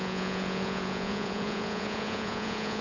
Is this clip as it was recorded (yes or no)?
no